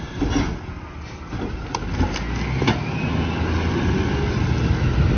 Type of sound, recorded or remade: recorded